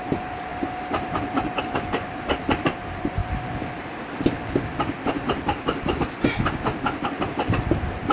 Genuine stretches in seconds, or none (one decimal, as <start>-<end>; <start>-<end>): 0.0-8.1